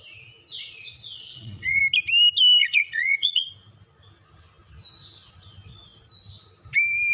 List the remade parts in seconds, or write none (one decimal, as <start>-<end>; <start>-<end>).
0.5-1.8; 2.6-3.5